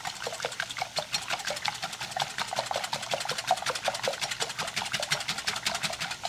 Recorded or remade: recorded